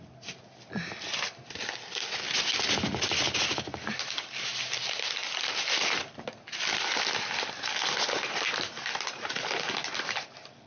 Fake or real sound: real